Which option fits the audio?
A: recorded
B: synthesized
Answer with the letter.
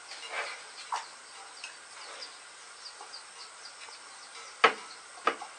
A